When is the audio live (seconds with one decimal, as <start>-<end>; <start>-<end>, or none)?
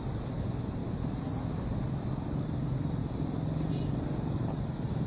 0.0-5.1